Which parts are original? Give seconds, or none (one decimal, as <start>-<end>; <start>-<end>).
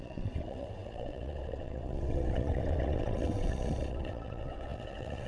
none